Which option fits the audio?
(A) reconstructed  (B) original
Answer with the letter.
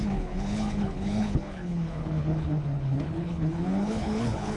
A